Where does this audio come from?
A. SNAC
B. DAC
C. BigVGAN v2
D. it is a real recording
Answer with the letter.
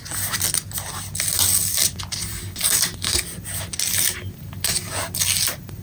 D